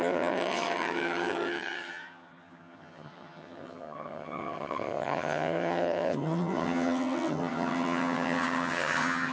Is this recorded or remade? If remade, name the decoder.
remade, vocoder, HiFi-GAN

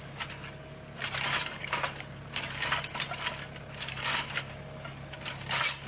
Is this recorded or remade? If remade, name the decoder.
recorded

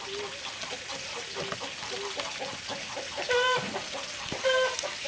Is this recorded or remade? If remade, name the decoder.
recorded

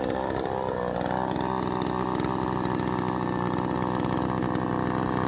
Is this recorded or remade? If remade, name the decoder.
recorded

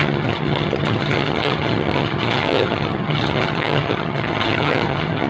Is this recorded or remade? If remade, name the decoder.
remade, vocoder, HiFi-GAN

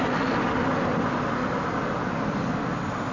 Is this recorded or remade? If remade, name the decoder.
recorded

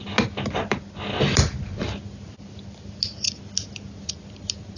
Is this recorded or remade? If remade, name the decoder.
recorded